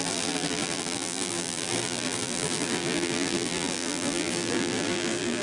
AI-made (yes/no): yes